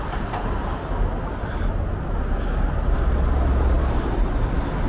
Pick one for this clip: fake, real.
real